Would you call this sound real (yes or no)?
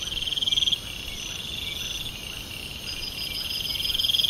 yes